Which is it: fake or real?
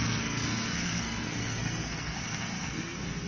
fake